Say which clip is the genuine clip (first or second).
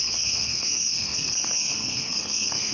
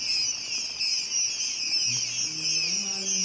second